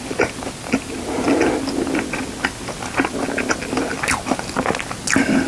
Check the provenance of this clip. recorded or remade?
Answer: recorded